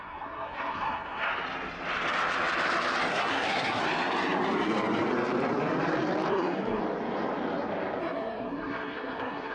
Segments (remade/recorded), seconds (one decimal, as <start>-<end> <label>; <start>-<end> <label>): 0.0-1.3 remade; 1.3-3.1 recorded; 3.1-3.8 remade; 3.8-6.3 recorded; 6.3-6.8 remade; 6.8-8.0 recorded; 8.0-9.5 remade